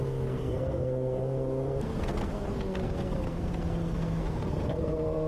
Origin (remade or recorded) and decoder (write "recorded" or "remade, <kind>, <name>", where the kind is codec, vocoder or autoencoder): remade, codec, SNAC